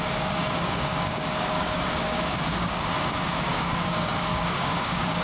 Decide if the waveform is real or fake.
fake